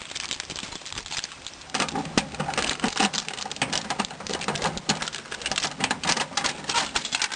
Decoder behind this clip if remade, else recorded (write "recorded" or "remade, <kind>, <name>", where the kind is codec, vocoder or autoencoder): recorded